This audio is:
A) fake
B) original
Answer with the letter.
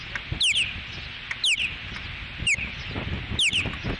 B